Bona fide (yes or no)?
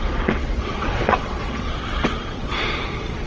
no